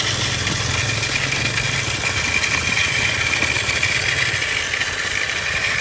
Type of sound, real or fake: real